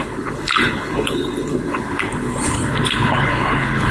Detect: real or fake fake